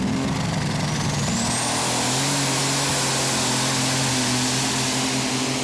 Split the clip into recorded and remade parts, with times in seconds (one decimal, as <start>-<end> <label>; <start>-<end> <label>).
0.0-5.6 recorded